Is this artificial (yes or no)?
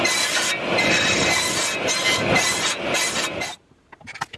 no